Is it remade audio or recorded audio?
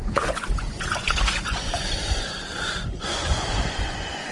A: remade